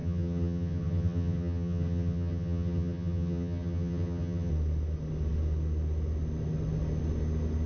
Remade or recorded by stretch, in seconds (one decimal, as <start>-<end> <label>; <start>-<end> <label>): 0.0-4.5 remade; 4.5-7.7 recorded